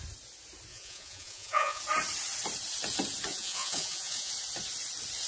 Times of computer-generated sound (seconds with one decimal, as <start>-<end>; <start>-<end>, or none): 0.7-1.8; 3.3-4.3